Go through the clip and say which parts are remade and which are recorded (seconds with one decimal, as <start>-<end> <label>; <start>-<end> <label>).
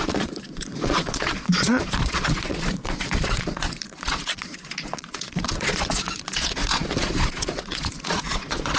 0.0-8.8 remade